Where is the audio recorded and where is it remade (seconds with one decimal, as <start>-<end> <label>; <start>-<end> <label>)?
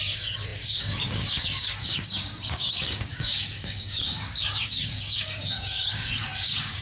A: 0.0-6.8 remade